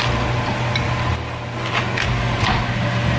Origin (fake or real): real